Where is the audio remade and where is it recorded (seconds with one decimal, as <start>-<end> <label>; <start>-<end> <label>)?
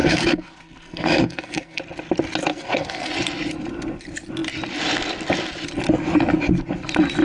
0.0-1.8 remade; 1.8-2.5 recorded; 2.5-3.1 remade; 3.1-7.2 recorded